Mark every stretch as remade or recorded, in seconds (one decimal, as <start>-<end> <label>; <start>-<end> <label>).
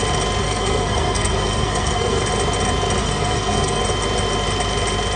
0.0-0.4 recorded; 0.4-2.2 remade; 2.2-3.0 recorded; 3.0-3.8 remade; 3.8-5.2 recorded